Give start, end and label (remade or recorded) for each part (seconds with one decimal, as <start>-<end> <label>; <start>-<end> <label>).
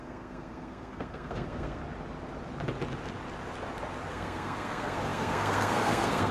0.0-1.8 remade; 1.8-4.1 recorded; 4.1-6.3 remade